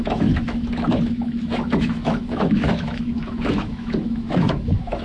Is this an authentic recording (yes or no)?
no